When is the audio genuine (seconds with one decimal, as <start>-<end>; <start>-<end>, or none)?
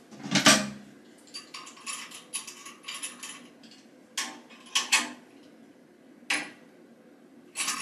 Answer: 0.0-7.8